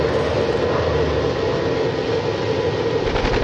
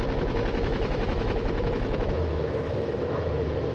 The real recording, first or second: first